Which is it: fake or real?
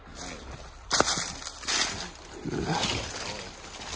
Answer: real